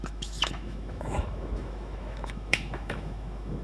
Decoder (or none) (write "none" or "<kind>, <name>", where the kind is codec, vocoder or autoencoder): autoencoder, DAC-VAE